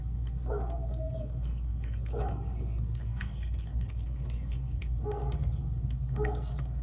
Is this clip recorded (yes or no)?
no